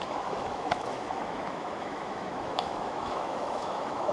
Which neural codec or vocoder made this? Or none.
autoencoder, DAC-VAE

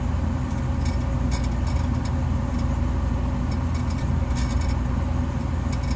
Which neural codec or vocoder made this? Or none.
none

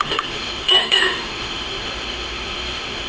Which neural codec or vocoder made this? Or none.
autoencoder, DAC-VAE